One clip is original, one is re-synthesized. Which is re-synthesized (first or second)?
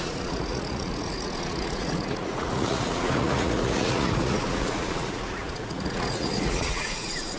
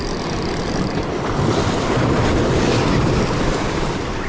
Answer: first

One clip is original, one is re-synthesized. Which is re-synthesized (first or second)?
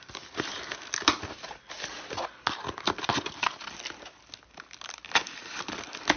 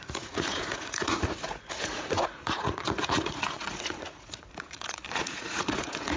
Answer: second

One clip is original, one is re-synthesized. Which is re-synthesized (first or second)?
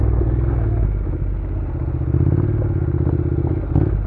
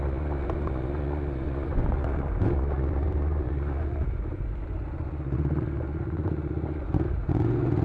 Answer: second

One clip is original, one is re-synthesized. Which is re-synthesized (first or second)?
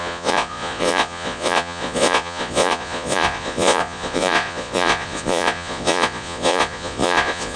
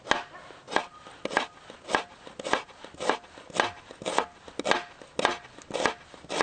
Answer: first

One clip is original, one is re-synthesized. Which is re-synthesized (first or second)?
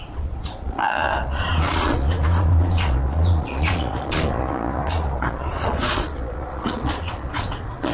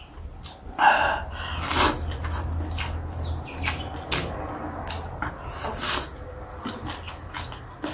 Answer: first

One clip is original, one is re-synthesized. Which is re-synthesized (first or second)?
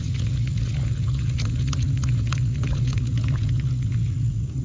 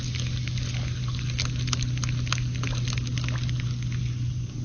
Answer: first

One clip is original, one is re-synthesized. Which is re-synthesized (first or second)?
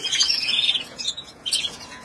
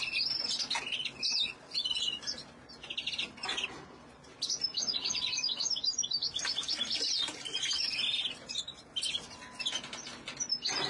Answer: first